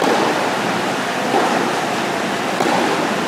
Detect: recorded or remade remade